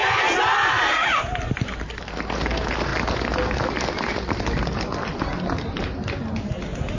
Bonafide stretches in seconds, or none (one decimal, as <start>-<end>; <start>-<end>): 0.0-0.6; 2.0-7.0